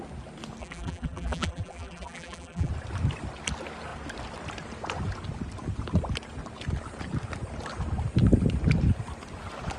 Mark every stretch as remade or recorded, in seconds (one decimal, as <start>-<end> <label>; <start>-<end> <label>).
0.0-0.6 recorded; 0.6-2.7 remade; 2.7-9.8 recorded